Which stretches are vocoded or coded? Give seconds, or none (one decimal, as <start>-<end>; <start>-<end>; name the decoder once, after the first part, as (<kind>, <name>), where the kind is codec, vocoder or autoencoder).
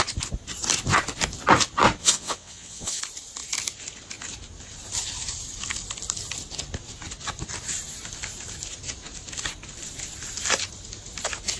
2.0-3.0 (vocoder, WaveNeXt)